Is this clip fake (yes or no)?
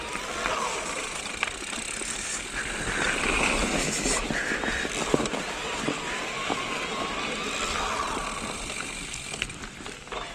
no